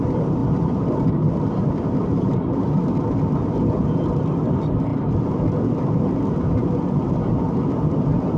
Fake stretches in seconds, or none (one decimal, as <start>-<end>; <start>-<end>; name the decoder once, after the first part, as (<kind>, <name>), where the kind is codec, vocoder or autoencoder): none